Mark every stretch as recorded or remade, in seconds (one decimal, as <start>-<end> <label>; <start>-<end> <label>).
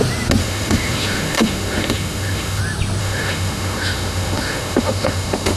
0.0-0.4 recorded; 0.4-2.6 remade; 2.6-3.0 recorded; 3.0-5.6 remade